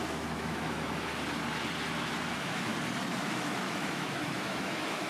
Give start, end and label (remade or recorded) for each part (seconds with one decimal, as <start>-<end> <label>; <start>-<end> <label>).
0.0-1.1 remade; 1.1-2.3 recorded; 2.3-2.7 remade; 2.7-3.2 recorded; 3.2-5.1 remade